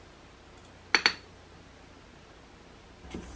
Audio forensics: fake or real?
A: real